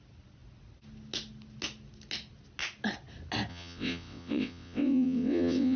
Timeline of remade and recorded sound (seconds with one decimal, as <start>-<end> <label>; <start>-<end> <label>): 0.0-3.5 recorded; 3.5-5.8 remade